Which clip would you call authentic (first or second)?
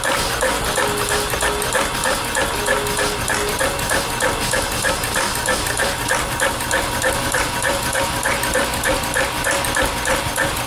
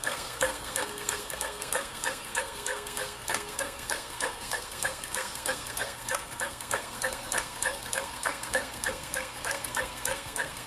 first